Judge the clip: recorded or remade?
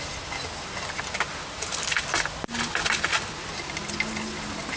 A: recorded